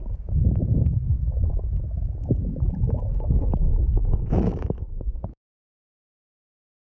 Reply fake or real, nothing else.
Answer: fake